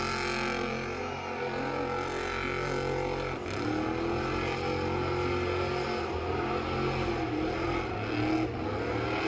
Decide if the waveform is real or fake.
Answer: real